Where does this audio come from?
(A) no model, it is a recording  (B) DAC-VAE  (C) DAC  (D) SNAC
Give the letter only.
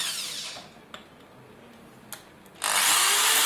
A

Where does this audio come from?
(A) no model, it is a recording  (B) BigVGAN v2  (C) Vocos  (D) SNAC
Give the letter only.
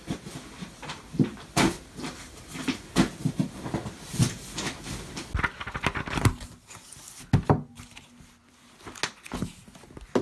A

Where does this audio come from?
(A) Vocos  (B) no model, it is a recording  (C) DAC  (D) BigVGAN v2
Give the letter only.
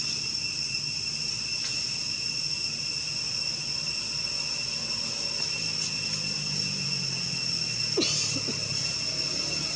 B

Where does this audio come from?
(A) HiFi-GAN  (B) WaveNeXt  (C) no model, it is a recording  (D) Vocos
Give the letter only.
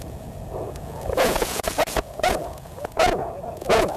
D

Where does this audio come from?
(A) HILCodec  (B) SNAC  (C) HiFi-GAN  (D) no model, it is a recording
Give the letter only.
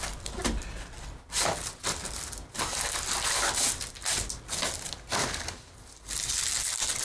D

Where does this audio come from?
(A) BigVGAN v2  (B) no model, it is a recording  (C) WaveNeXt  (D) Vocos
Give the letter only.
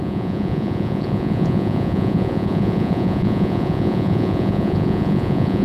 D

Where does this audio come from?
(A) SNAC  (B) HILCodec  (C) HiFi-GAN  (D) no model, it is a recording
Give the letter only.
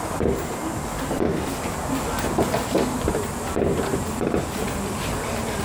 D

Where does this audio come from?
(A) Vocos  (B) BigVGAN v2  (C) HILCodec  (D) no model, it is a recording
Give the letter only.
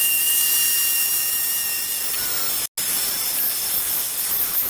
D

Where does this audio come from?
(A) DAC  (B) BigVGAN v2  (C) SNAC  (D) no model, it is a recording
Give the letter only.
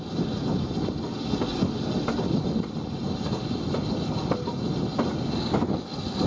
D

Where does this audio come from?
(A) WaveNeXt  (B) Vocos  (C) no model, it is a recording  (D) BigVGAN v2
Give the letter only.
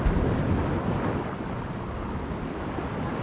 C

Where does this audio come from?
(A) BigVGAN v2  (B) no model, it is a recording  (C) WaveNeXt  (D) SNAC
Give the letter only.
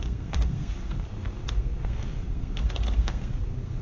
D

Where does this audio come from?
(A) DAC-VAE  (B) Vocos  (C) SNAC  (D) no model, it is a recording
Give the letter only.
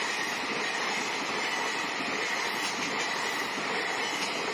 D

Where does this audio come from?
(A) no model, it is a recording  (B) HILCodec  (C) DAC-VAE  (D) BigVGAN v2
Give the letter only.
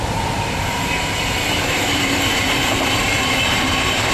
D